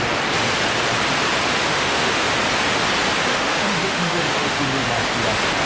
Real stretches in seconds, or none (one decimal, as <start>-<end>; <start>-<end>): 0.0-1.7; 2.3-3.3; 4.8-5.7